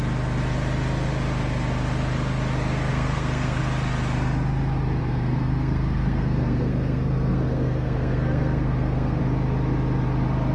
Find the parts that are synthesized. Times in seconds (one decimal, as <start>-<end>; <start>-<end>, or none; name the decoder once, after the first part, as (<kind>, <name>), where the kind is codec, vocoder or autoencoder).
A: 2.9-3.6 (codec, SNAC); 5.0-9.2